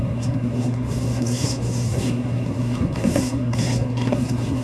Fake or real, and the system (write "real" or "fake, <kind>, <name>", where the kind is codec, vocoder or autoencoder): fake, codec, SNAC